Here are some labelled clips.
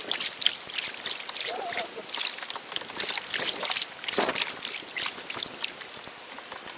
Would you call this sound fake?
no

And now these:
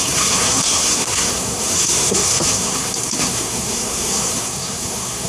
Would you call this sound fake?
yes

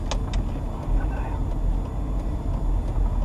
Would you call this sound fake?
no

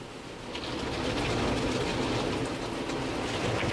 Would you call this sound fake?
no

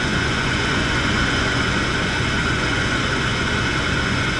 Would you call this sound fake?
yes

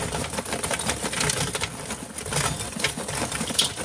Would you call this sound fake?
no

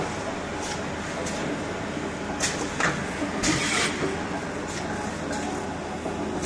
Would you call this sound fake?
no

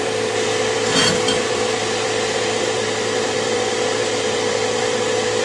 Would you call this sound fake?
yes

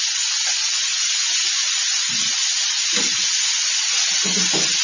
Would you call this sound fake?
no